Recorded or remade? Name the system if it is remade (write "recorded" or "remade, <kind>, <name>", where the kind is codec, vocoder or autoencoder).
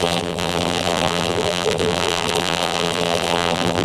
remade, vocoder, BigVGAN v2